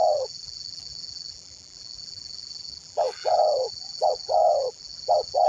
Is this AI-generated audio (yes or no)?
yes